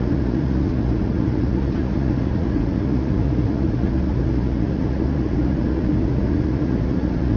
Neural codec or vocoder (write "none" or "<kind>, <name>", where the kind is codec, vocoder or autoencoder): vocoder, Vocos